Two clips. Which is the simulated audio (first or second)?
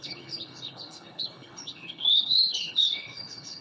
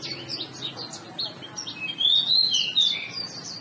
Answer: first